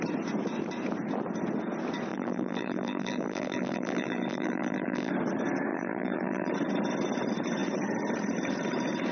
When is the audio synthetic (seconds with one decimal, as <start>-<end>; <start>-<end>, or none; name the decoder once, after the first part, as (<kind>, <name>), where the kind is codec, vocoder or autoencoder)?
2.1-5.1 (vocoder, BigVGAN v2); 5.7-6.5